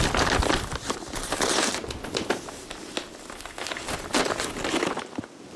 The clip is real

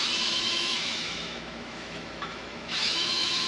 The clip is fake